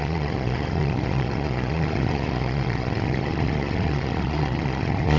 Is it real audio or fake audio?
fake